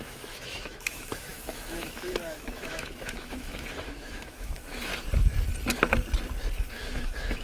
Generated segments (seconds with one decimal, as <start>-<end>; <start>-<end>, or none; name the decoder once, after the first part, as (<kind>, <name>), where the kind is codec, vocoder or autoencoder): 0.0-4.9 (autoencoder, DAC-VAE); 6.7-7.4